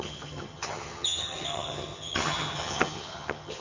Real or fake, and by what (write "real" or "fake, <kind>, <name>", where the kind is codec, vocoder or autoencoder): fake, vocoder, HiFi-GAN